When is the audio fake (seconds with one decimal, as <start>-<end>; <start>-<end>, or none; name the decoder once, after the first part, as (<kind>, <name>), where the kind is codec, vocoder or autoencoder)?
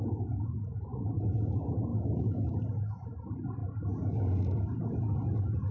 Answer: 1.9-2.5 (autoencoder, DAC-VAE)